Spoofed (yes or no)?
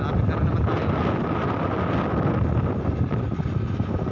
no